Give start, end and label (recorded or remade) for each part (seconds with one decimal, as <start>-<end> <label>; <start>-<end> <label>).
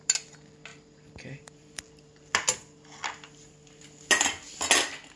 0.0-0.7 recorded; 0.7-1.8 remade; 1.8-5.2 recorded